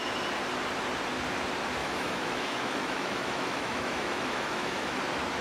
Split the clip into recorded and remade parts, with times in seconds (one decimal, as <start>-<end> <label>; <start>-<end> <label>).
0.0-1.8 recorded; 1.8-5.0 remade; 5.0-5.4 recorded